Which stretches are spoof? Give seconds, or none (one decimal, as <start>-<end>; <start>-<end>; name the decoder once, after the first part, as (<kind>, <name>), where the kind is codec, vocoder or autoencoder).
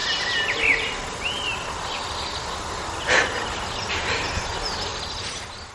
4.9-5.7 (vocoder, BigVGAN v2)